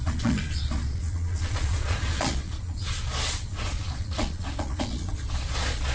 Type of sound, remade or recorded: remade